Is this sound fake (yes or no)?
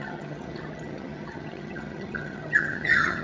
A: yes